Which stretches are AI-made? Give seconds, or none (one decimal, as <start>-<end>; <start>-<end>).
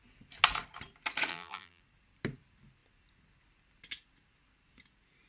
1.3-1.8